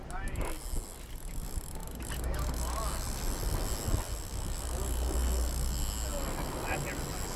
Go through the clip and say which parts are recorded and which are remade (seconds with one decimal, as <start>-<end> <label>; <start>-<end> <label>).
0.0-7.4 recorded